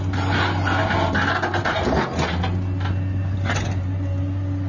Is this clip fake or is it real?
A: real